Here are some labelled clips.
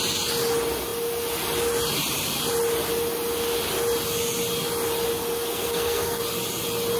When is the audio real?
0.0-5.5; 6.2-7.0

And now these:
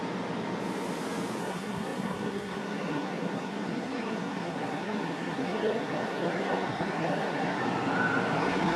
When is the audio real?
0.0-1.4; 7.6-8.4

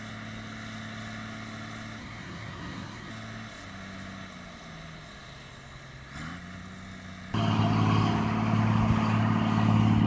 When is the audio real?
0.0-2.0; 3.1-10.1